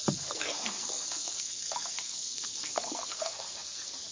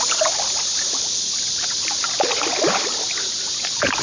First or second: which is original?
second